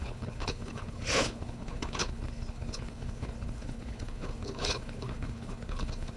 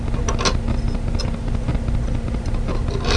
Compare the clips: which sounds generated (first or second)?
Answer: first